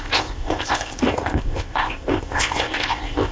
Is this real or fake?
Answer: fake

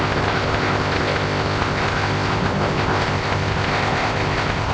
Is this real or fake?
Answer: fake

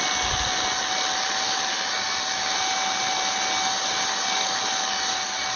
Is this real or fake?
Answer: real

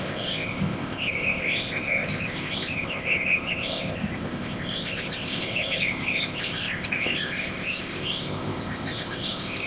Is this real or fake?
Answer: fake